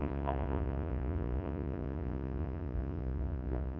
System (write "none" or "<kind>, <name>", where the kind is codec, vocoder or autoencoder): vocoder, Vocos